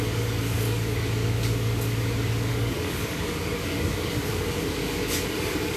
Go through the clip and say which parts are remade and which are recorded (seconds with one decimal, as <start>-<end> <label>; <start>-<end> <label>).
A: 0.0-5.8 remade